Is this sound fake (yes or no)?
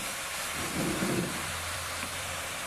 yes